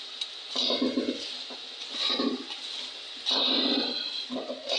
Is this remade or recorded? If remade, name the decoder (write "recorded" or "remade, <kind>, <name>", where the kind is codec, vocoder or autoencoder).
recorded